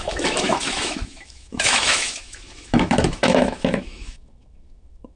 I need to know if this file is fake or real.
fake